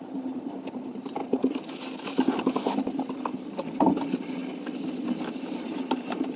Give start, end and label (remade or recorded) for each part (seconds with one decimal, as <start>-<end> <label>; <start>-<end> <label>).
0.0-1.2 remade; 1.2-3.3 recorded; 3.3-4.4 remade; 4.4-5.3 recorded; 5.3-6.4 remade